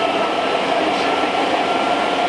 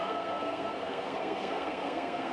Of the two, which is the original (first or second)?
first